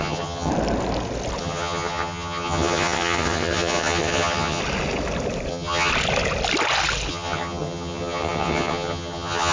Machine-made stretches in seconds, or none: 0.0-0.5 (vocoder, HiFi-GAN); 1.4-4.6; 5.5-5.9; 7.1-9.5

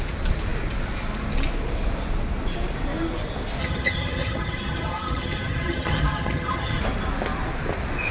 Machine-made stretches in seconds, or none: 3.6-6.8 (vocoder, HiFi-GAN)

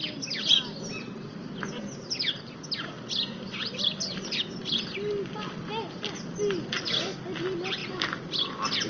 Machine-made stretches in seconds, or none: none

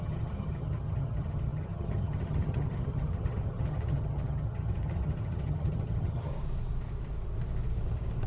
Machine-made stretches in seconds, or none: 0.0-6.3 (vocoder, HiFi-GAN)